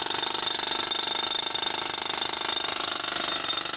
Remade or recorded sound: recorded